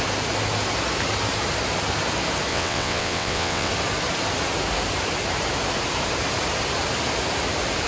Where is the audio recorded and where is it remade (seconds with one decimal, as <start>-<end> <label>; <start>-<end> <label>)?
0.0-2.5 recorded; 2.5-3.7 remade; 3.7-7.9 recorded